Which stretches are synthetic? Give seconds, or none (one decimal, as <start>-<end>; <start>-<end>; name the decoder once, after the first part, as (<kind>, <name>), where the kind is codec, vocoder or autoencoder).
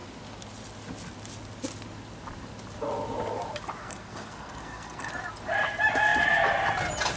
3.8-5.1 (codec, SNAC)